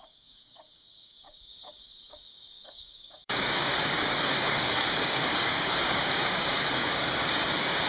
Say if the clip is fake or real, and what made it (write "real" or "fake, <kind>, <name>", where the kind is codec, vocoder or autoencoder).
fake, codec, DAC